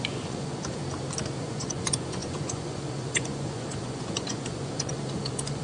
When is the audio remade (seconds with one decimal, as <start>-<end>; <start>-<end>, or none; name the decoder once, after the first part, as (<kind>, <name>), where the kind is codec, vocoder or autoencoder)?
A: 0.0-0.8 (vocoder, Vocos); 1.4-5.6